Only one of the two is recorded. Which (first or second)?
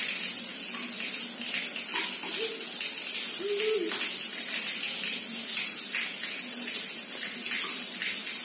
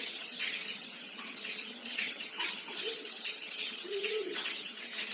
first